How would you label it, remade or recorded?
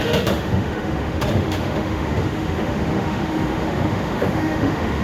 remade